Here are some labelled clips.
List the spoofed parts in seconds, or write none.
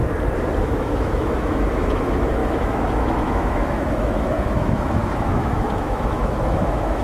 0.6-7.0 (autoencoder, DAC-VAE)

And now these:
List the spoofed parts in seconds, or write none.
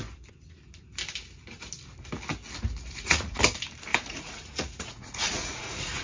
2.8-3.4 (vocoder, Vocos); 3.9-6.0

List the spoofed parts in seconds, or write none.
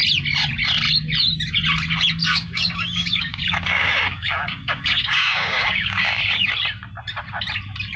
2.2-6.5 (codec, DAC)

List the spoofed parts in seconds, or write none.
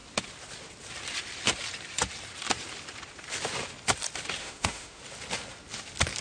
4.4-5.0 (autoencoder, DAC-VAE)